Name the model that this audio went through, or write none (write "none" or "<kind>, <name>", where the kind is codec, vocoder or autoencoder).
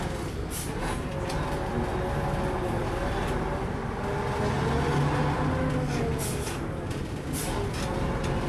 none